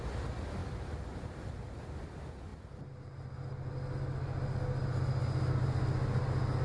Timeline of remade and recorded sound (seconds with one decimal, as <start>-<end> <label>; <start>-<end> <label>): 0.0-6.6 recorded